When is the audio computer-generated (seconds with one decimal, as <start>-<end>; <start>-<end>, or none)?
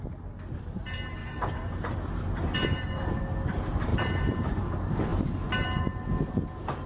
1.2-3.2; 3.9-4.6